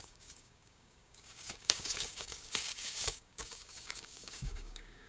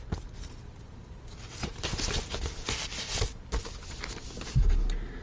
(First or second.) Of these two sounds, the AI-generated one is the first